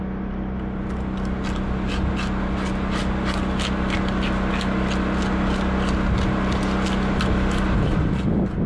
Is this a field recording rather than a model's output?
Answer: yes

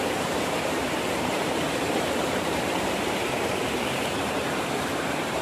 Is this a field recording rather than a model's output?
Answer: no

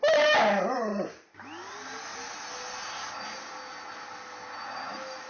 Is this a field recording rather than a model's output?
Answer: yes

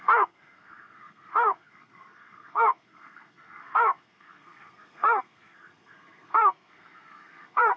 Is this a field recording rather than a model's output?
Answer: no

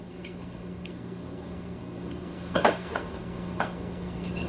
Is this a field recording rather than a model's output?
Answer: no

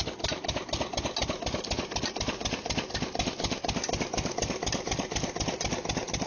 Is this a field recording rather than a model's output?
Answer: yes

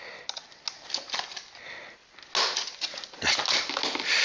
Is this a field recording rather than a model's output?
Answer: yes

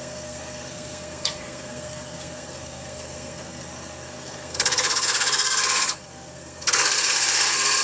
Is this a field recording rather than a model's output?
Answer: no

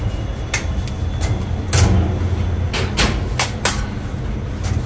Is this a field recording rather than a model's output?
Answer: yes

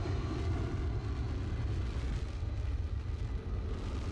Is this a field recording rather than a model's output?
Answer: yes